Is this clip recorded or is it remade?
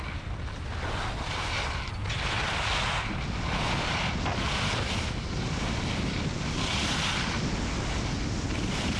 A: recorded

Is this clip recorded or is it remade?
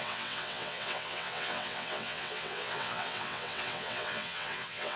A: remade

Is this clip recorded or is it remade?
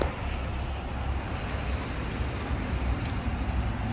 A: recorded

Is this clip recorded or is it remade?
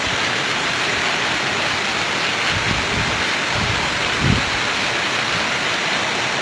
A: recorded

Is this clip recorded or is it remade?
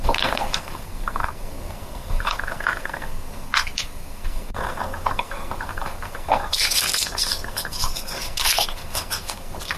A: remade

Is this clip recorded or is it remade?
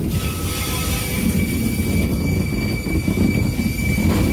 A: recorded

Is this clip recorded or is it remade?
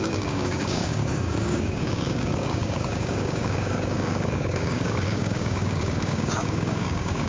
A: remade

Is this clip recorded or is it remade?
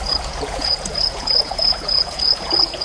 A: remade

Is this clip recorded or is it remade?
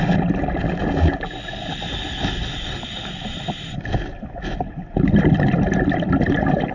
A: recorded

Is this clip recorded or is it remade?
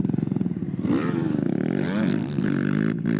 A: recorded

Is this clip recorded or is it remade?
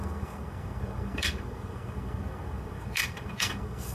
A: remade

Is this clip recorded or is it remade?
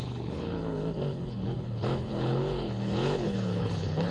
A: remade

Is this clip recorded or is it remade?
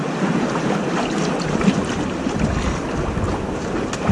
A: recorded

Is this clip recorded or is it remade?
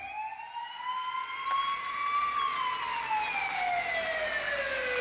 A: recorded